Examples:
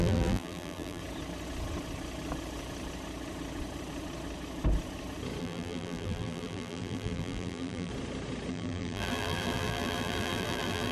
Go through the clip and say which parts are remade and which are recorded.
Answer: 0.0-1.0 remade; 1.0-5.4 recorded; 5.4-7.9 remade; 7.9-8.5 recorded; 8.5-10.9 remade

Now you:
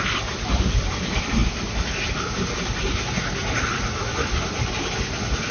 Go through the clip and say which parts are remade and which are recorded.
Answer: 0.0-5.5 recorded

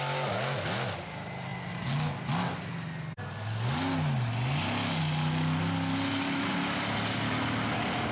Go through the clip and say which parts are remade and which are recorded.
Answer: 0.0-8.1 recorded

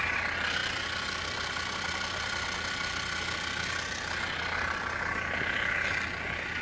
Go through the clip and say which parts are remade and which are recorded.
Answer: 0.0-6.6 recorded